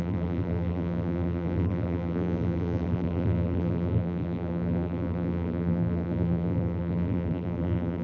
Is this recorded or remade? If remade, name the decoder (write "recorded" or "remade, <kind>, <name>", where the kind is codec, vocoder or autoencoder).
remade, vocoder, BigVGAN v2